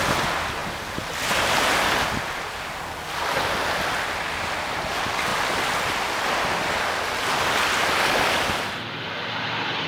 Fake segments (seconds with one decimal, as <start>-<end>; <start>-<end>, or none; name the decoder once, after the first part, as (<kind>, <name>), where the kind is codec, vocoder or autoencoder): none